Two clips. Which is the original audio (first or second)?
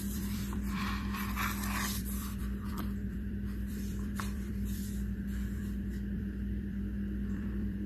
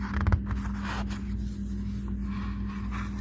second